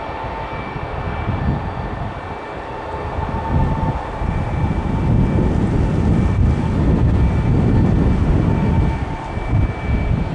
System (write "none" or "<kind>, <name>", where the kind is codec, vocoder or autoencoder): none